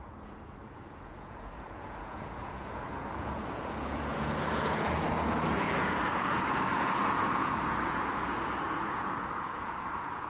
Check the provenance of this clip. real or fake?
fake